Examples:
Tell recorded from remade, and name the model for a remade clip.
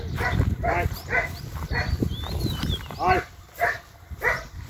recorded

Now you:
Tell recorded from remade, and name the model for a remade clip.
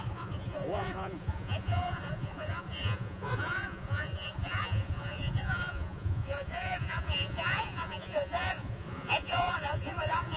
remade, vocoder, Vocos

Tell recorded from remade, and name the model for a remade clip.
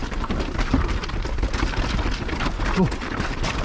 recorded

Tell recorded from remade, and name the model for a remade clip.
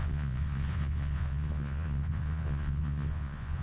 remade, vocoder, Vocos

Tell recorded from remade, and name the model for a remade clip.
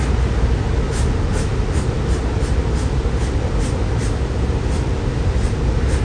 recorded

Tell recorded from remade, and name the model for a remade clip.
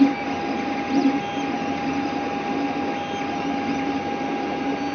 recorded